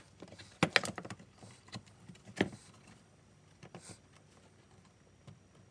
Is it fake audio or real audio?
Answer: real